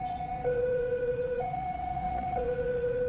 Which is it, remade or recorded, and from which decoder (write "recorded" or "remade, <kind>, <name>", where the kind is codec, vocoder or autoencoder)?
remade, vocoder, WaveNeXt